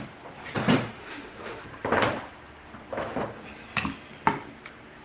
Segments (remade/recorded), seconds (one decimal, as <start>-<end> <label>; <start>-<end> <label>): 0.0-1.0 recorded; 1.0-1.6 remade; 1.6-5.0 recorded